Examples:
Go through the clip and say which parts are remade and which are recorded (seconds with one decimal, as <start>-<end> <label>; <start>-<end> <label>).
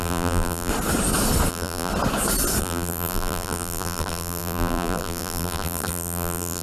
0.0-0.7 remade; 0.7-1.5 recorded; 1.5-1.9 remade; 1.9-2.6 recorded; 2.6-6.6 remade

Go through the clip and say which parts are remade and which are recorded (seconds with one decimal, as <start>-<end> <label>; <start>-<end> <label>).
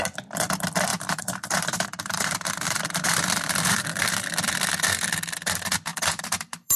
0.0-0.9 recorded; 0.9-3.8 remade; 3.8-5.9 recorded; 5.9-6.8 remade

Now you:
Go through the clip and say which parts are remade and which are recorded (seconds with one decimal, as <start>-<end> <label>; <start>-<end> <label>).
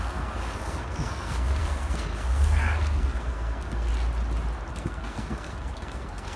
0.0-3.9 remade; 3.9-4.7 recorded; 4.7-6.4 remade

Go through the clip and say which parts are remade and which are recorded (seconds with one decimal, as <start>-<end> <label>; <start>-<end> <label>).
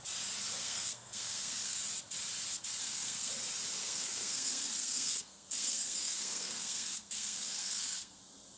0.0-0.6 recorded; 0.6-1.8 remade; 1.8-2.8 recorded; 2.8-3.3 remade; 3.3-3.8 recorded; 3.8-8.2 remade; 8.2-8.6 recorded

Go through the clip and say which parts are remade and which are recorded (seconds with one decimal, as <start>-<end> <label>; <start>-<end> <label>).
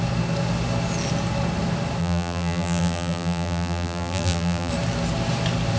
0.0-2.0 recorded; 2.0-4.7 remade; 4.7-5.8 recorded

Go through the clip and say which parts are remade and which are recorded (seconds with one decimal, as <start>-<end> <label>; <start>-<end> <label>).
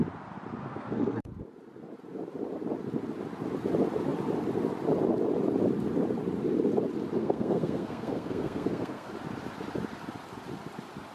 0.0-0.6 recorded; 0.6-1.3 remade; 1.3-7.2 recorded; 7.2-9.1 remade; 9.1-11.1 recorded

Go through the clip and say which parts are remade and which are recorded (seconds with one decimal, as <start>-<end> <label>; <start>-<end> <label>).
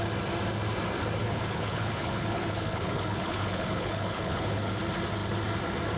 0.0-1.2 recorded; 1.2-4.8 remade; 4.8-6.0 recorded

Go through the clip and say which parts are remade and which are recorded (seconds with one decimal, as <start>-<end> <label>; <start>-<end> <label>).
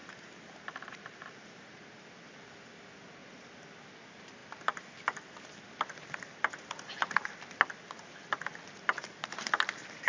0.0-1.8 remade; 1.8-10.1 recorded